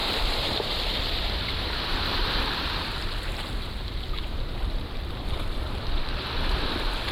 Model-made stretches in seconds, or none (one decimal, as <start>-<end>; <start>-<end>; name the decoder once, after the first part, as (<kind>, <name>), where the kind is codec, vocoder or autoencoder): 0.0-7.1 (vocoder, BigVGAN v2)